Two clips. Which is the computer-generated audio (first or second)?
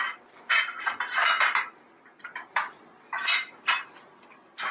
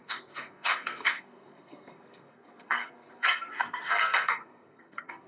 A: second